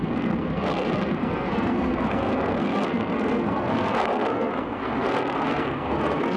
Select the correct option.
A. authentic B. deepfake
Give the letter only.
B